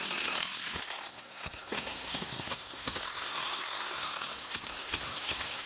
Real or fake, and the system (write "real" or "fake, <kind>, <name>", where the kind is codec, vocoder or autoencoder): fake, codec, SNAC